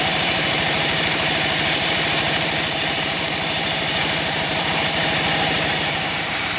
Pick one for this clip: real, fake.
fake